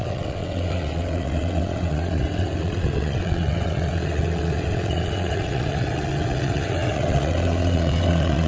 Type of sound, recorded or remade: remade